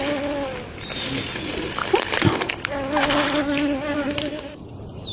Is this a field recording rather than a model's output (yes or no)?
yes